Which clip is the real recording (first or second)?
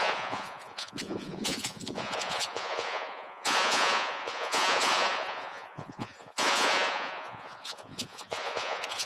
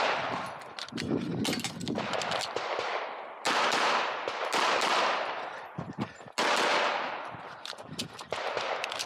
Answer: second